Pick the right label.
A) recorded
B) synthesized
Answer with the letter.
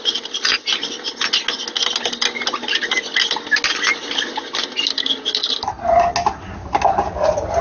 A